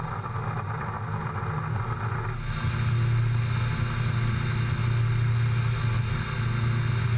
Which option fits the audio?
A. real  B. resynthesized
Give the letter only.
A